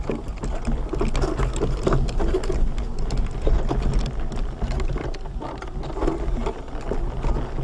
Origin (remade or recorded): recorded